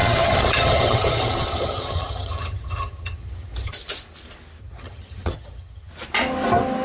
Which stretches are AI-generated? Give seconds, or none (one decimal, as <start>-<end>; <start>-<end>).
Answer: 0.0-3.7; 4.6-5.9